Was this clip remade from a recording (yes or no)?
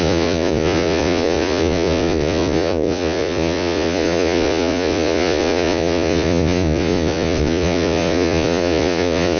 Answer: yes